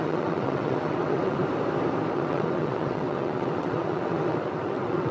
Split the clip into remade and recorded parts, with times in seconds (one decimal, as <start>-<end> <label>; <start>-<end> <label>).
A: 0.0-1.4 remade; 1.4-2.1 recorded; 2.1-5.1 remade